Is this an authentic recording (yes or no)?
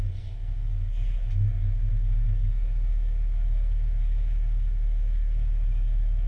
no